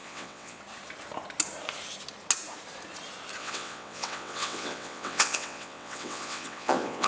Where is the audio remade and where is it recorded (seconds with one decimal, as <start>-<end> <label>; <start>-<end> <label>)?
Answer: 0.0-0.6 remade; 0.6-3.4 recorded; 3.4-7.1 remade